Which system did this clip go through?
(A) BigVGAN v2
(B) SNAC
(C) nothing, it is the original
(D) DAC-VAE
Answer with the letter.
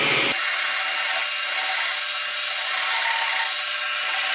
C